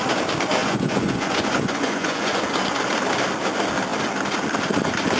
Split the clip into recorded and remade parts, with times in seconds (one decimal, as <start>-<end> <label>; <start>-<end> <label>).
0.0-0.6 recorded; 0.6-2.4 remade; 2.4-5.2 recorded